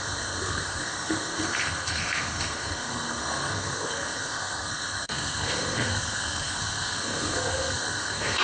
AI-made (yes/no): yes